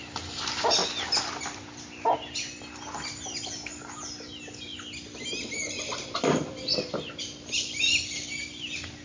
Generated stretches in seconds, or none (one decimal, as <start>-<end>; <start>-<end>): 0.0-0.8; 3.0-9.0